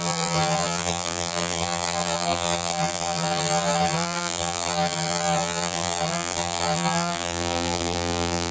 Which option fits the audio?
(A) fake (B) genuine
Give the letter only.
A